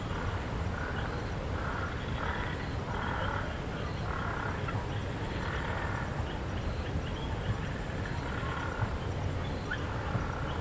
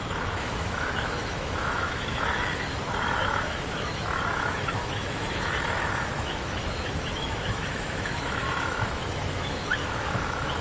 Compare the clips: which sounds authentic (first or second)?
first